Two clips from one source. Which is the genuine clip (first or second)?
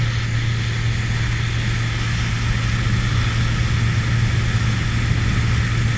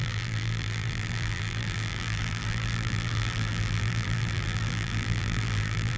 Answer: first